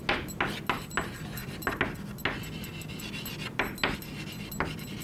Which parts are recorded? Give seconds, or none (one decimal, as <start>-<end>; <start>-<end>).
0.0-5.0

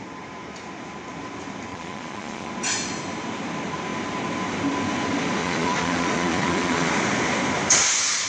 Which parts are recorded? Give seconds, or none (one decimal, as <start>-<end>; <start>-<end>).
0.0-1.7; 2.5-5.4; 6.9-8.3

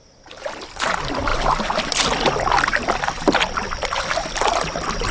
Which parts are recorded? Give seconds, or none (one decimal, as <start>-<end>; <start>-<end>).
0.0-5.1

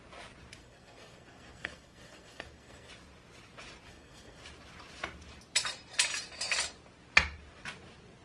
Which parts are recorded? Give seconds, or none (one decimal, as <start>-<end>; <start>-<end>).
0.0-0.6; 2.9-3.9; 4.4-8.2

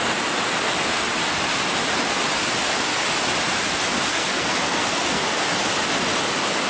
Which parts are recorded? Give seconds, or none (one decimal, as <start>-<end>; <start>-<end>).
0.0-4.1; 5.2-6.7

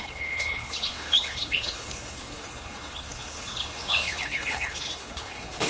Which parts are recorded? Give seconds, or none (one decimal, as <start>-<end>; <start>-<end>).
none

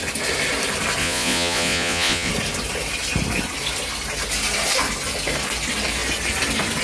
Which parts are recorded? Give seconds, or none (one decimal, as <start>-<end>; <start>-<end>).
0.0-1.0; 2.3-6.8